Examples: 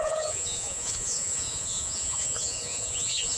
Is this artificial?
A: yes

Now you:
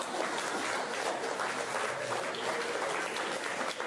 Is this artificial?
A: no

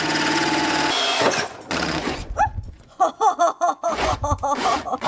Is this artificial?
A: yes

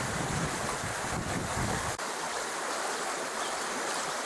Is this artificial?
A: no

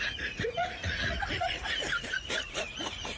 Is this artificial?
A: yes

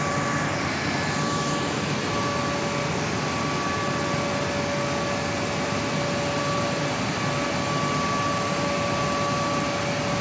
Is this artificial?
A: no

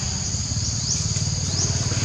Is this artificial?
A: no